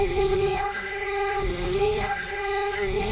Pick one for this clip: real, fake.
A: fake